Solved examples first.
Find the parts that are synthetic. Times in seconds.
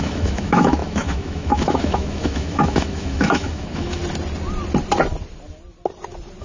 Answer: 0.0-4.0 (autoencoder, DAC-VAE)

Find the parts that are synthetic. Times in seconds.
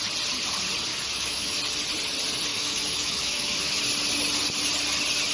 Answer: 0.9-1.6 (autoencoder, DAC-VAE); 2.5-3.8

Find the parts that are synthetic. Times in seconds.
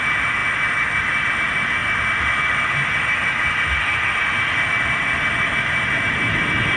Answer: none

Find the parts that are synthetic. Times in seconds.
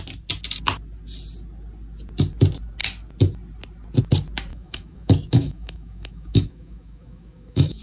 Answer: 4.5-7.8 (autoencoder, DAC-VAE)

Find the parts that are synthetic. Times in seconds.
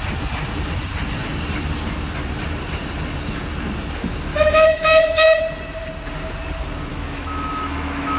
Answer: 4.3-5.4 (autoencoder, DAC-VAE); 6.9-8.2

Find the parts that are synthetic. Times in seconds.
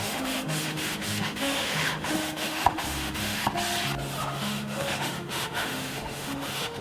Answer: 0.0-3.4 (autoencoder, DAC-VAE); 4.2-6.8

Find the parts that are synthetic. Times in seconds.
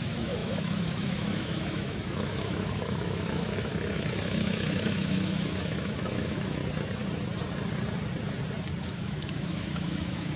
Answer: 0.0-6.6 (autoencoder, DAC-VAE); 8.8-10.4